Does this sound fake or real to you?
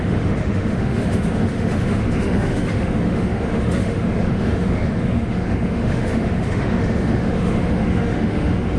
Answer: fake